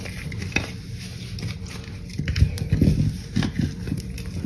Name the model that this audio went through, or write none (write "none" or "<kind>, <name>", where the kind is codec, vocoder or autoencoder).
none